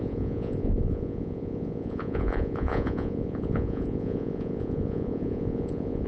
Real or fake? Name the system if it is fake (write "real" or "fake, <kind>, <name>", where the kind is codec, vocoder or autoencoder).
fake, vocoder, Vocos